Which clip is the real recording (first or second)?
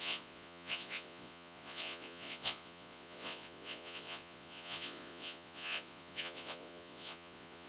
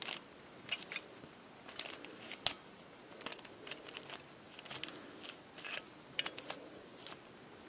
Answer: second